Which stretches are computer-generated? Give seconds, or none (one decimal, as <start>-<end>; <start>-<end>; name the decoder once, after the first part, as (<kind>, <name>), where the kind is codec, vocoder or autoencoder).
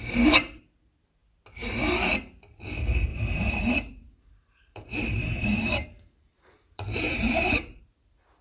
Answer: 3.1-7.8 (vocoder, BigVGAN v2)